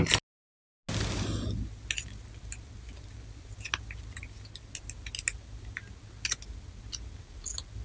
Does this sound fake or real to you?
real